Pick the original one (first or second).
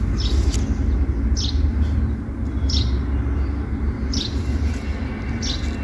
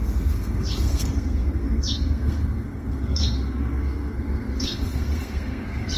first